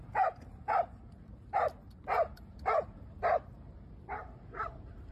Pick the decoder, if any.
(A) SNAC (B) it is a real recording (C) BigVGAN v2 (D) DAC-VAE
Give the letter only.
C